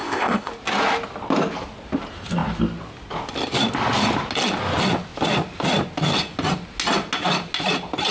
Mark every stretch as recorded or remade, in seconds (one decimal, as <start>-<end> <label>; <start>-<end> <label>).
0.0-0.5 remade; 0.5-8.1 recorded